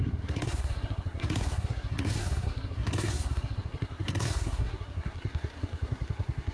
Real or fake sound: fake